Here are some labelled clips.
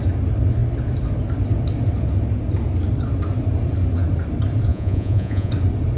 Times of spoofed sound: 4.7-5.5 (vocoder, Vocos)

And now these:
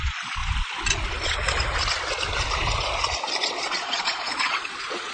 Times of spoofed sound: 0.0-0.4 (vocoder, Vocos); 3.5-5.1

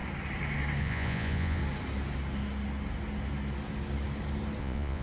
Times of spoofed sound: 0.8-1.6 (vocoder, Vocos); 4.6-5.0

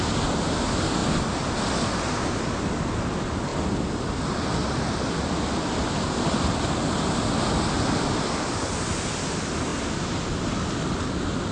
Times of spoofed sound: none

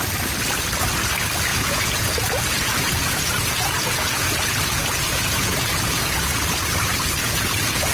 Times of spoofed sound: 1.5-6.2 (vocoder, Vocos); 7.2-7.9